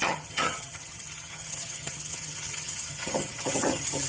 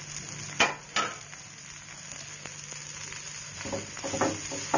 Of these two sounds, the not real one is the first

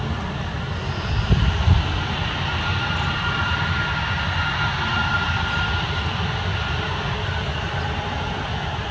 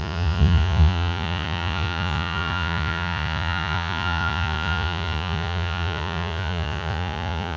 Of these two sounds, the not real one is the second